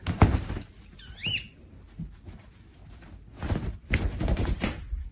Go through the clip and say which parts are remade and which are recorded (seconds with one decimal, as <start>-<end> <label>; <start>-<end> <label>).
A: 0.0-5.1 remade